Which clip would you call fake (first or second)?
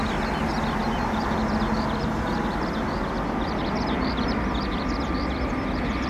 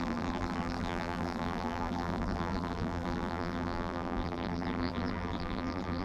second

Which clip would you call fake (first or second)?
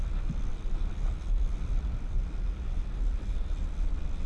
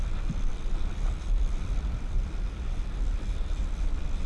second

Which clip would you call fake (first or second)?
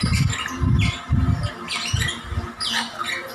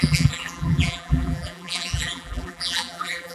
second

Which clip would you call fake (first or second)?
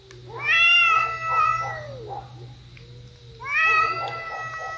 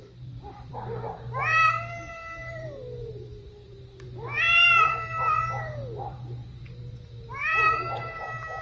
second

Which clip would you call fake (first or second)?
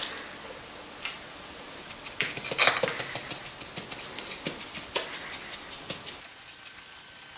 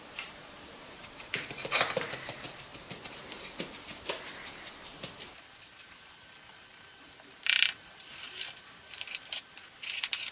second